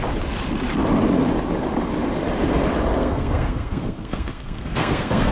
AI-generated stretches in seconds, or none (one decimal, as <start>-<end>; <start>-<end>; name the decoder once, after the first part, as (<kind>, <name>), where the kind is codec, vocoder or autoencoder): 3.0-5.3 (codec, SNAC)